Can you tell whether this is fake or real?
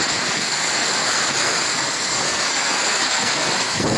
fake